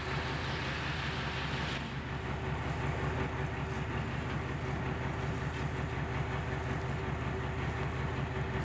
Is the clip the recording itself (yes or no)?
yes